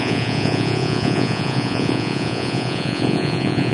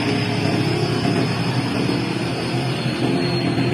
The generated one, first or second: first